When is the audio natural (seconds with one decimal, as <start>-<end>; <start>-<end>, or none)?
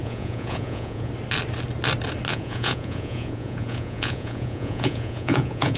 1.1-2.3